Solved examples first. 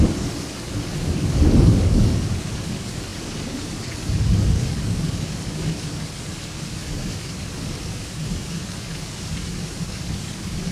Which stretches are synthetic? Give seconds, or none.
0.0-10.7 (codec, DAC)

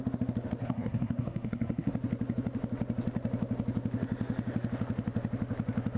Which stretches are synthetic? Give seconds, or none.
0.6-1.9 (codec, SNAC)

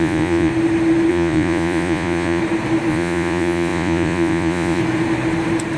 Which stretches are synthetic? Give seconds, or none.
0.0-0.5 (vocoder, Vocos); 1.1-2.4; 2.9-4.8

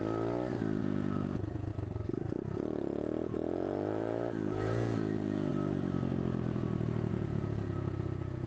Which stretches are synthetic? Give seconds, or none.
0.8-1.7 (vocoder, Vocos); 2.5-5.5; 7.1-8.5

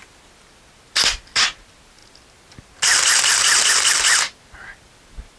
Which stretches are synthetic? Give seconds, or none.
none

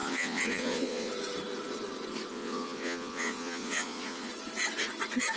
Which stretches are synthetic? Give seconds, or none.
0.0-1.1 (vocoder, Vocos); 2.3-4.3

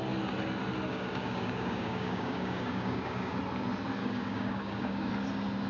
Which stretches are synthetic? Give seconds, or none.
0.9-3.4 (codec, DAC); 4.0-5.1

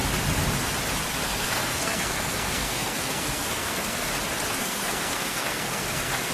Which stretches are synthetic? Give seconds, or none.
1.2-4.1 (codec, SNAC); 4.6-6.3